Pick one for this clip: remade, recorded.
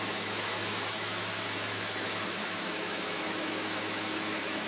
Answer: remade